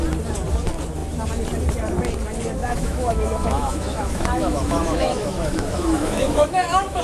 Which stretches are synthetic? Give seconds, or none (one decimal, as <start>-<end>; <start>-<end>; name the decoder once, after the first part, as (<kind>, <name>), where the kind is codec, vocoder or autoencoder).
2.6-7.0 (autoencoder, DAC-VAE)